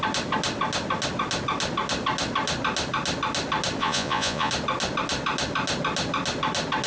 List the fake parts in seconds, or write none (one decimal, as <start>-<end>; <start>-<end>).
3.8-4.5